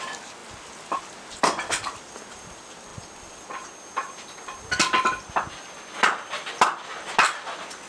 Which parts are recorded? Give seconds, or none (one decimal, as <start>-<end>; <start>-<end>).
0.0-7.9